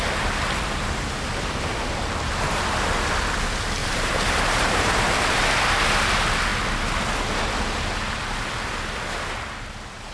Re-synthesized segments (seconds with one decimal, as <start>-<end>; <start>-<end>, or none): 3.8-5.4